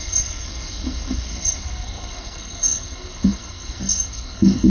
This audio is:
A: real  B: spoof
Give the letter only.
B